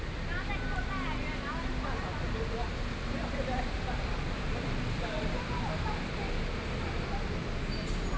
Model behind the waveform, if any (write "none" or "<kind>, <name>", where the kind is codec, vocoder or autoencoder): none